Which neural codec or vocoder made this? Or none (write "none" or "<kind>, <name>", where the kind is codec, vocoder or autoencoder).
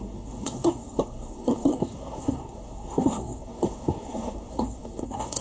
codec, SNAC